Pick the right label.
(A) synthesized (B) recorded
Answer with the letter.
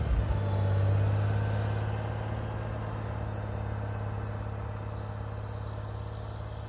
B